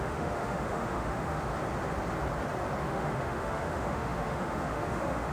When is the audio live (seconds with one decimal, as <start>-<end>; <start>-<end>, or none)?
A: 1.5-2.8